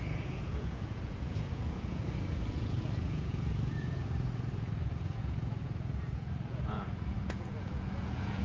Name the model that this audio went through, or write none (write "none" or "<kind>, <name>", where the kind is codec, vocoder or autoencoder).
vocoder, Vocos